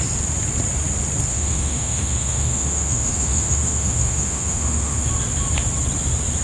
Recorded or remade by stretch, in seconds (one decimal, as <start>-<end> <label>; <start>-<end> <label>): 0.0-1.3 recorded; 1.3-5.1 remade; 5.1-6.4 recorded